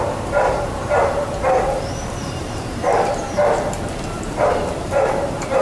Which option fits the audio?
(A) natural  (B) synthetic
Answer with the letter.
B